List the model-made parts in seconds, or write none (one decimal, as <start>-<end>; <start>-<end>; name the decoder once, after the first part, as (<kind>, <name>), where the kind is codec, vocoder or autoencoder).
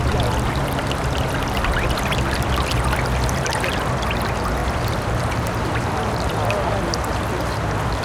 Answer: 4.6-6.3 (vocoder, BigVGAN v2)